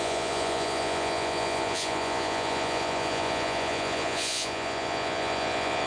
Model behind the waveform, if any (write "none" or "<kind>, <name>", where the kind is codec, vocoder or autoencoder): vocoder, Vocos